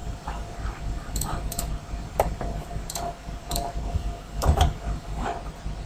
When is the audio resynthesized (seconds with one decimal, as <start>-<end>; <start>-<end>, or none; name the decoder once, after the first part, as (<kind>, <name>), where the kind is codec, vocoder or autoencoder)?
0.0-5.3 (codec, DAC)